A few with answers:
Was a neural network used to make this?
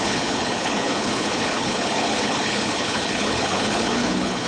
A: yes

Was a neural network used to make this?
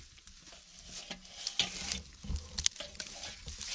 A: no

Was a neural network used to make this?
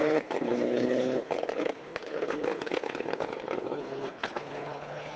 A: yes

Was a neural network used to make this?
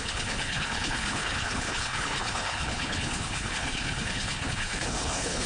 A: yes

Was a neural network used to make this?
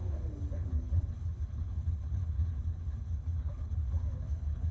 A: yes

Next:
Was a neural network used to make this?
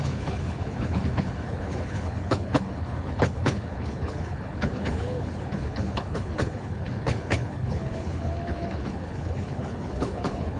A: yes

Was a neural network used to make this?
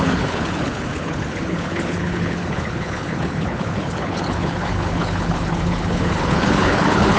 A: yes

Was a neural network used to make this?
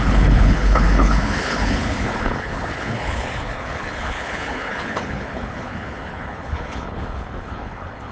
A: yes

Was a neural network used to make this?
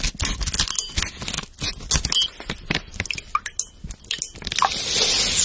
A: no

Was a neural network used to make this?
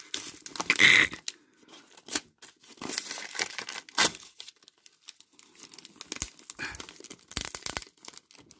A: no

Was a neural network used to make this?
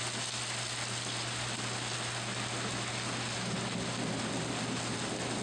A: no